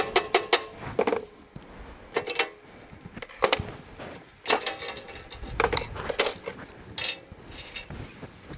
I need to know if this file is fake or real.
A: real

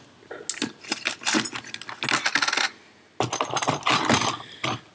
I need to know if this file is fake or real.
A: real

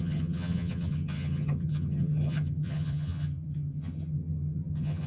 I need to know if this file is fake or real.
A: fake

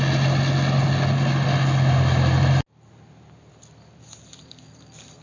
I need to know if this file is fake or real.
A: real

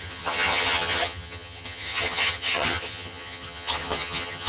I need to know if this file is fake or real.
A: fake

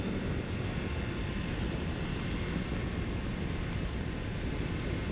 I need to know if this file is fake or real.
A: real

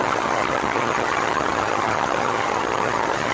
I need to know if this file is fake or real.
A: fake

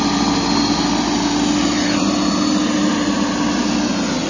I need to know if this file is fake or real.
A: real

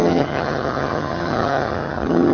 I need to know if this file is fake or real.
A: fake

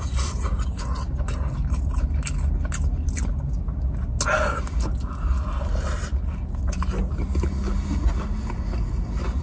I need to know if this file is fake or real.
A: real